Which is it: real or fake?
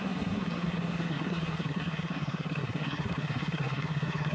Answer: fake